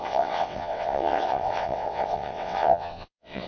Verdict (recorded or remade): remade